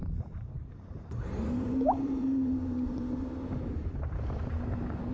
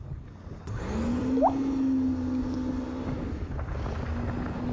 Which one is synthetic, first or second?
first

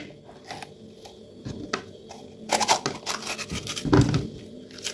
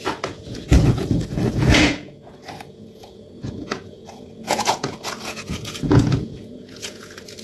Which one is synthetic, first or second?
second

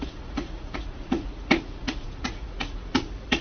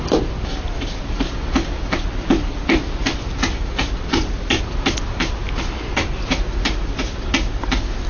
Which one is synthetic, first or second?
first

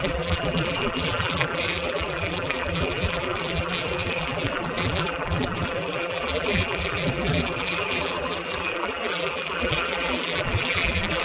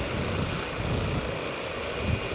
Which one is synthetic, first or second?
first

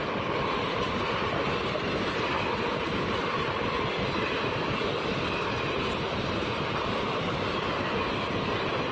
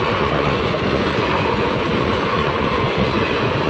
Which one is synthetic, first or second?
second